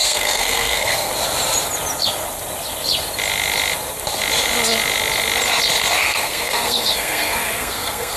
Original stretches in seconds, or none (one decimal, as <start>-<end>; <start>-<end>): 1.1-6.0